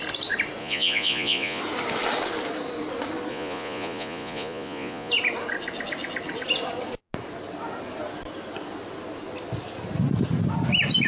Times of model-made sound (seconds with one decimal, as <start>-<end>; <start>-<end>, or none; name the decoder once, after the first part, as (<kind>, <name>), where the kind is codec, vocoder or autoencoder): 0.6-1.6 (vocoder, Vocos); 3.3-5.1